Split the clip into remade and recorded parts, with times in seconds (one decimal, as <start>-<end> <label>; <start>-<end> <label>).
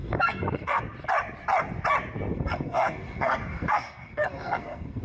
0.0-0.8 remade; 0.8-2.3 recorded; 2.3-5.0 remade